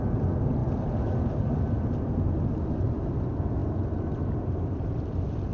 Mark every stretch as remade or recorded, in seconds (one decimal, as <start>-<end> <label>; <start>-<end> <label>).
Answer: 0.0-5.5 recorded